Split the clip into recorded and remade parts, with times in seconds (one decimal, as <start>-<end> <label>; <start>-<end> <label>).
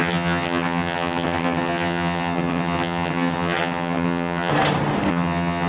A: 0.0-4.5 remade; 4.5-5.1 recorded; 5.1-5.7 remade